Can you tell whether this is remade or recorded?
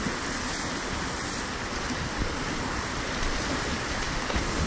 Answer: recorded